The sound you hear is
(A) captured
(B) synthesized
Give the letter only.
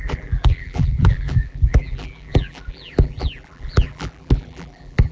B